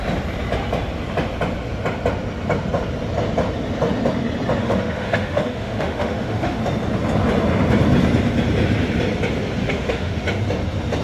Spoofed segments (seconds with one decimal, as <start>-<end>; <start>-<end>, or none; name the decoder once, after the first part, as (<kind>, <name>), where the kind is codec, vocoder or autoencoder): 4.6-6.6 (autoencoder, DAC-VAE); 9.6-10.2